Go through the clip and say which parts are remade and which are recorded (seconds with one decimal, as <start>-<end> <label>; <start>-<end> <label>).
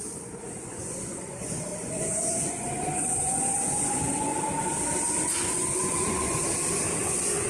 0.0-4.3 remade; 4.3-5.2 recorded; 5.2-6.4 remade; 6.4-7.0 recorded; 7.0-7.5 remade